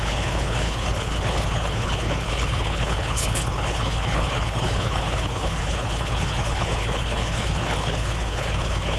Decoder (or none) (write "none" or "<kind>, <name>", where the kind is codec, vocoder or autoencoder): codec, HILCodec